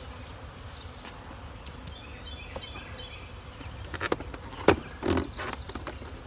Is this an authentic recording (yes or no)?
yes